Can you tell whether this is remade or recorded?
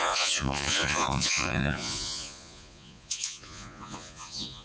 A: remade